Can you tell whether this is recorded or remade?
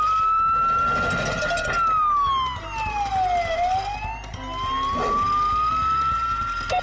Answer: recorded